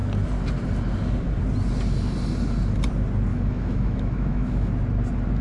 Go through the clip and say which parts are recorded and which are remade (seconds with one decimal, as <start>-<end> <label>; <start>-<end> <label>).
0.0-3.3 recorded; 3.3-4.7 remade; 4.7-5.4 recorded